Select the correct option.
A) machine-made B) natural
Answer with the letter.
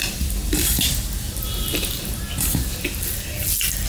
B